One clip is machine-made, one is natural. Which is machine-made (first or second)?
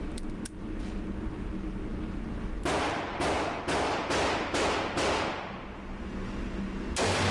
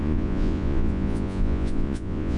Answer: second